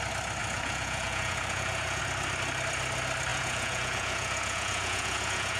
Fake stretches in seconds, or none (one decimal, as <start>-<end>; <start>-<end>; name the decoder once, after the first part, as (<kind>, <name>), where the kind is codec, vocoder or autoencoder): 0.4-2.0 (vocoder, Vocos); 3.3-5.6